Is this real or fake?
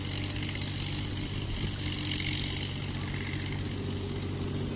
real